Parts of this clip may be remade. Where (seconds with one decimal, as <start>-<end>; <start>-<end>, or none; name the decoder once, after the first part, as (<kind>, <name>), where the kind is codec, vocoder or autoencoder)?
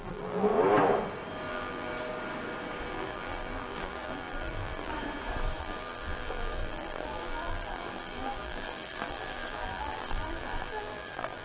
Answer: 0.0-0.5 (vocoder, BigVGAN v2); 1.5-1.9; 2.9-4.9; 5.6-11.4